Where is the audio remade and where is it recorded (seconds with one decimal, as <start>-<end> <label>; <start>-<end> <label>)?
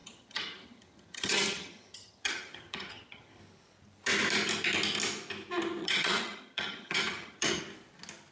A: 0.0-3.4 remade; 3.4-5.8 recorded; 5.8-7.6 remade; 7.6-8.3 recorded